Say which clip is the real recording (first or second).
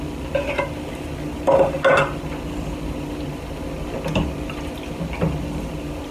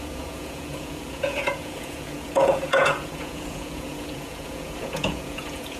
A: first